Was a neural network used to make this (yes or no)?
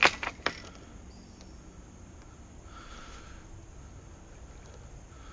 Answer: no